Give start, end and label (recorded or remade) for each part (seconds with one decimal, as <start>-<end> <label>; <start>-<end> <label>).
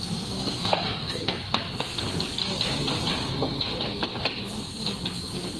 0.0-2.4 remade; 2.4-4.7 recorded; 4.7-5.6 remade